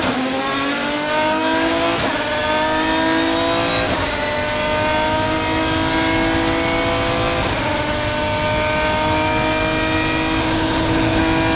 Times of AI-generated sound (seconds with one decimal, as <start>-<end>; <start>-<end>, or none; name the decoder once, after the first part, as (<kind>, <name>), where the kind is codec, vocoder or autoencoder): 10.4-11.2 (codec, HILCodec)